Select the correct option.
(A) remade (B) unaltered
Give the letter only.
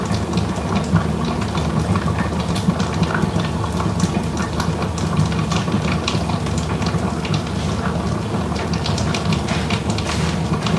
B